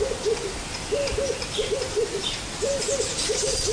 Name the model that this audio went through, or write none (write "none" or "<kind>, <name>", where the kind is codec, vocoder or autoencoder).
vocoder, BigVGAN v2